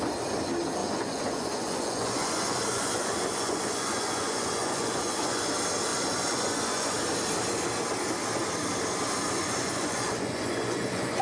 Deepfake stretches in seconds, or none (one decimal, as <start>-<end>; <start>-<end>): 0.8-5.5; 5.9-6.9; 9.4-11.2